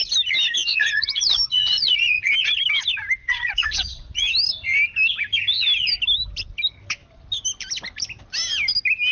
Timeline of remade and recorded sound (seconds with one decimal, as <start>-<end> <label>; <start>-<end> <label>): 0.0-0.6 recorded; 0.6-2.3 remade; 2.3-3.2 recorded; 3.2-4.3 remade; 4.3-9.1 recorded